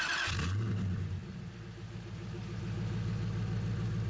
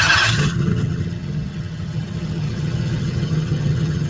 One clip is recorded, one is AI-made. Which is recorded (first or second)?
first